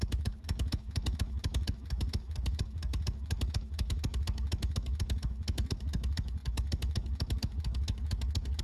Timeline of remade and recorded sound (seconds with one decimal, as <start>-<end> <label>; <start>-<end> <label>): 0.0-8.6 remade